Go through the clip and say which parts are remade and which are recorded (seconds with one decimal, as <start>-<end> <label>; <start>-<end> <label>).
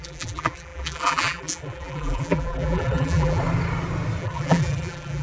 0.0-3.4 remade; 3.4-4.2 recorded; 4.2-5.2 remade